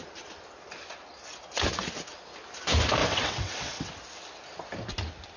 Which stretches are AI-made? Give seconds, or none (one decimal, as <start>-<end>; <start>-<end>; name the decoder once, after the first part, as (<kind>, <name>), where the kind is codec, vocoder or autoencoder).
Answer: 3.0-3.9 (vocoder, WaveNeXt)